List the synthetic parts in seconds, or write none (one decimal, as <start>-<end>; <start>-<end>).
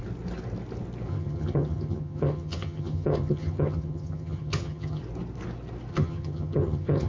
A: 1.1-5.0; 5.9-7.1